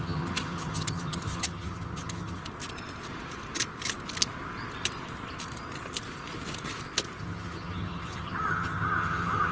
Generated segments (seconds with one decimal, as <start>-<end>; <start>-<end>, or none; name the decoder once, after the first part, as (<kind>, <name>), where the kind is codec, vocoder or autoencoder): 0.0-2.4 (vocoder, HiFi-GAN); 7.2-9.5